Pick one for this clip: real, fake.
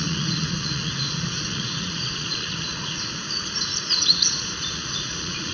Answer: fake